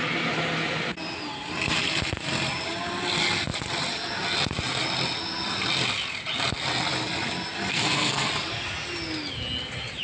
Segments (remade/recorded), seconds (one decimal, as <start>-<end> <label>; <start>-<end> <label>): 0.0-7.7 recorded; 7.7-8.3 remade; 8.3-10.0 recorded